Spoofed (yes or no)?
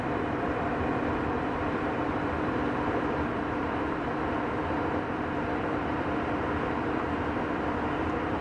yes